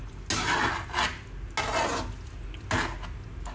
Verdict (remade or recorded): recorded